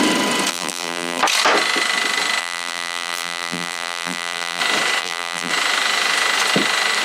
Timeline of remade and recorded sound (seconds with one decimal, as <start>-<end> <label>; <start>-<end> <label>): 0.0-0.5 recorded; 0.5-1.2 remade; 1.2-2.4 recorded; 2.4-4.6 remade; 4.6-5.0 recorded; 5.0-5.5 remade; 5.5-7.0 recorded